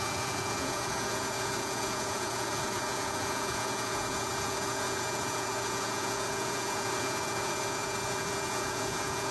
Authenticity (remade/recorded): remade